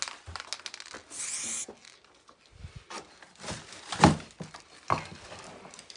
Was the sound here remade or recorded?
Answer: recorded